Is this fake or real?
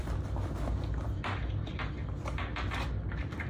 real